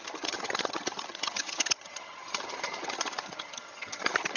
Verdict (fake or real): fake